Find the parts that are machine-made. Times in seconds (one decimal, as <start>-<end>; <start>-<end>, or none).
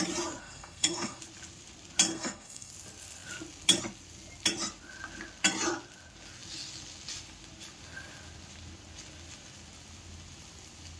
0.4-1.2; 2.1-2.7